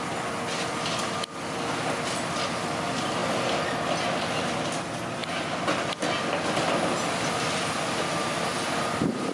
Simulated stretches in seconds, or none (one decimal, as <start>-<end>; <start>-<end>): none